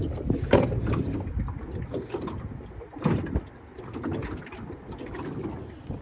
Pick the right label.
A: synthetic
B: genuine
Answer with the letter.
B